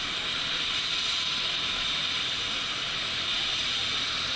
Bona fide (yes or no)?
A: no